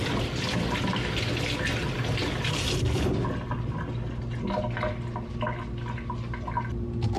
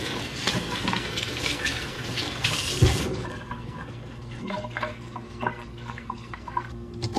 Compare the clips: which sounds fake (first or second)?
second